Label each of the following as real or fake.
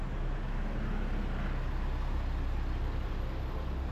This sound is real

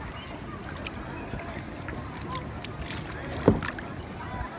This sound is real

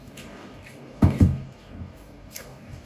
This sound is fake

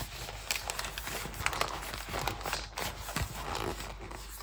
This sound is real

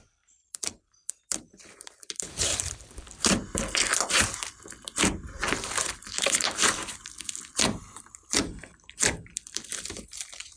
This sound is fake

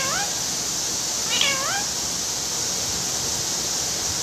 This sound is real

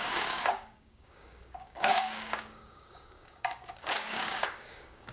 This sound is fake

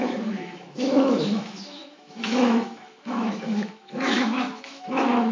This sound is fake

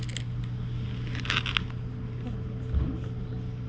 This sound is real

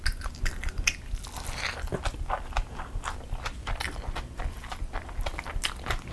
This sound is real